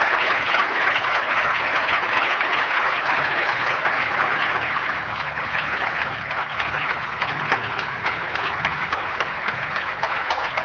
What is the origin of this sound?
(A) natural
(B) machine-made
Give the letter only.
B